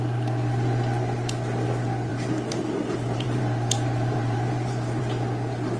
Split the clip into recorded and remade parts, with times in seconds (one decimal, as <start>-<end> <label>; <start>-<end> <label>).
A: 0.0-2.1 recorded; 2.1-5.0 remade; 5.0-5.8 recorded